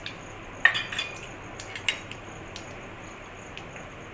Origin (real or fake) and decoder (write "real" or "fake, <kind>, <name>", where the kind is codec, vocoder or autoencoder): real